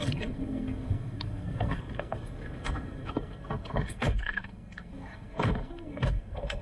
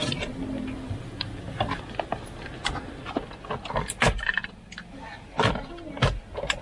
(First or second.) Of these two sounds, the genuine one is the second